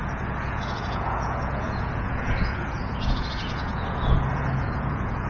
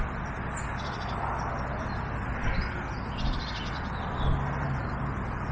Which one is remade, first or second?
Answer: first